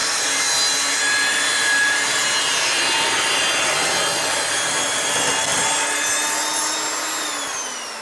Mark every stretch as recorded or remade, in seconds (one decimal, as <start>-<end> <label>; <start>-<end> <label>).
0.0-8.0 recorded